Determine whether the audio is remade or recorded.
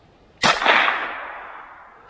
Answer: recorded